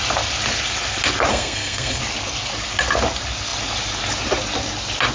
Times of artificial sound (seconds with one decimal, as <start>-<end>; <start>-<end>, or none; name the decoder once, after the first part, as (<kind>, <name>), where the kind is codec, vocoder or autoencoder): 1.3-2.0 (codec, SNAC)